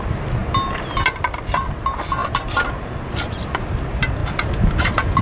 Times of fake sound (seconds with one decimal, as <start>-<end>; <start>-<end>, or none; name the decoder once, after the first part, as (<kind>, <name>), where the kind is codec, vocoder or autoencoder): 2.2-3.3 (vocoder, BigVGAN v2); 4.2-5.2